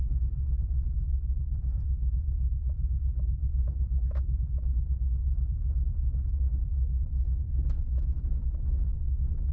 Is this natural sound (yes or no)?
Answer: yes